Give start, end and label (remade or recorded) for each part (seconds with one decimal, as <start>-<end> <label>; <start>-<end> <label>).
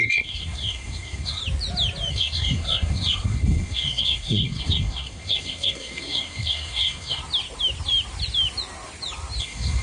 0.0-1.4 remade; 1.4-2.1 recorded; 2.1-7.2 remade; 7.2-9.4 recorded; 9.4-9.8 remade